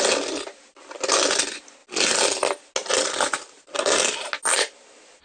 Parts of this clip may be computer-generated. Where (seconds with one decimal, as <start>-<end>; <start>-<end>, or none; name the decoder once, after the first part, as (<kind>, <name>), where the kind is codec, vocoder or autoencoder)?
none